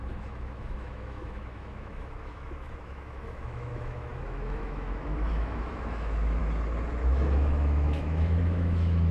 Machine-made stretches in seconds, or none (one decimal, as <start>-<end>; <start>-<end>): 0.0-6.4; 7.0-9.1